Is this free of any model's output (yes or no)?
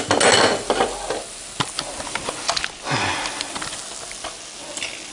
yes